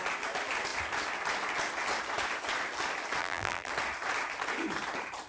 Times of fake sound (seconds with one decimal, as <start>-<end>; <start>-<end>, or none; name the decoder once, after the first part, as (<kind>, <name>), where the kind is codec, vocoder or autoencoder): 3.2-3.7 (vocoder, BigVGAN v2)